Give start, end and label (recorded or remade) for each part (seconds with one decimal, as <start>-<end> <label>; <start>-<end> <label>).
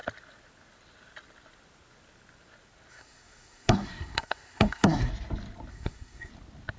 0.0-2.9 recorded; 2.9-5.1 remade; 5.1-5.7 recorded; 5.7-6.3 remade; 6.3-6.8 recorded